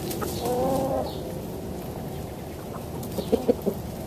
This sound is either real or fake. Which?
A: real